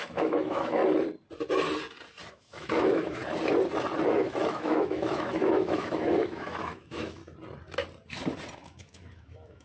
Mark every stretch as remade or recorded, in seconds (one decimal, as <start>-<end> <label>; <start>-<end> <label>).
0.0-0.8 remade; 0.8-2.3 recorded; 2.3-3.2 remade; 3.2-4.1 recorded; 4.1-7.2 remade; 7.2-8.5 recorded; 8.5-9.6 remade